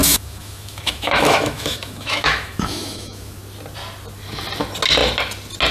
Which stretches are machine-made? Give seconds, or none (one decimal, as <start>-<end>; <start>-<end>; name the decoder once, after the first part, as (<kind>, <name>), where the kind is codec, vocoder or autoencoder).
0.0-3.4 (autoencoder, DAC-VAE)